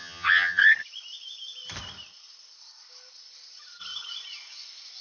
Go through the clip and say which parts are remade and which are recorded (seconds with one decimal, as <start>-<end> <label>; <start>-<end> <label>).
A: 0.0-0.6 remade; 0.6-5.0 recorded